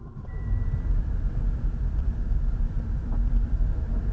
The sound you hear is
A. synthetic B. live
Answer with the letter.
A